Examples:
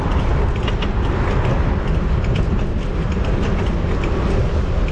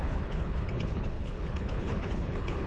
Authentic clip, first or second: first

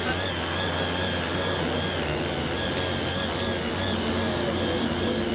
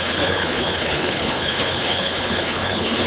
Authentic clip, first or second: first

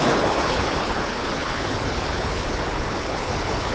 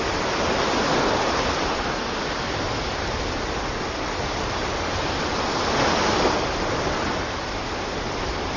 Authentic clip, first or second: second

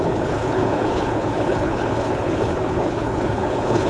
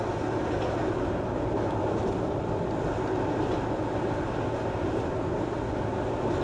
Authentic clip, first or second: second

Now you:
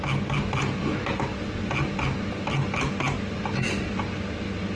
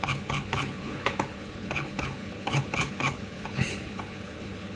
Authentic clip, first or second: first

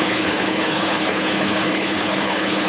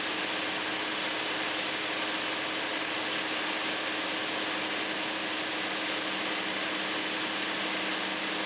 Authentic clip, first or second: second